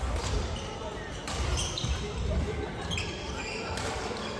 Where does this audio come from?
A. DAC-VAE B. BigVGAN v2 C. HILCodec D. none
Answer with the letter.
B